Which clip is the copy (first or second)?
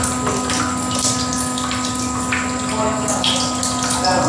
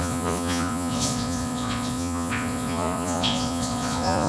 second